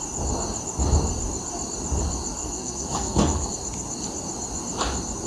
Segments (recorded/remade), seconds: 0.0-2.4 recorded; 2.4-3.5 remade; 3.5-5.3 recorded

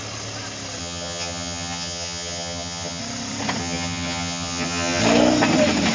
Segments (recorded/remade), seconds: 0.0-0.8 recorded; 0.8-3.0 remade; 3.0-3.6 recorded; 3.6-5.0 remade; 5.0-5.9 recorded

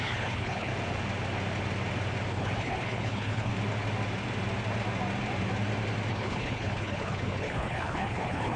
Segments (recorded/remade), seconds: 0.0-0.7 remade; 0.7-2.3 recorded; 2.3-3.5 remade; 3.5-6.1 recorded; 6.1-8.6 remade

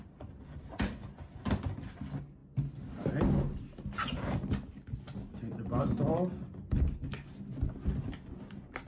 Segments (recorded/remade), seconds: 0.0-8.9 recorded

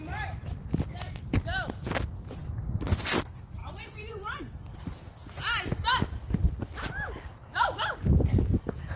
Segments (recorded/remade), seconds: 0.0-3.6 recorded; 3.6-4.4 remade; 4.4-9.0 recorded

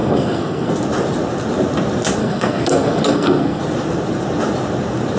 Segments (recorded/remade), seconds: 0.0-0.7 remade; 0.7-2.2 recorded; 2.2-3.6 remade; 3.6-5.2 recorded

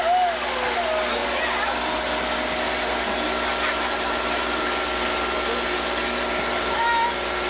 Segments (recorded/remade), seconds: 0.0-7.5 recorded

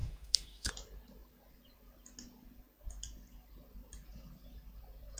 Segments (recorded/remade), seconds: 0.0-0.7 remade; 0.7-5.2 recorded